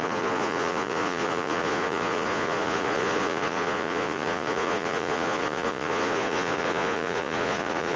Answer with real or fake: fake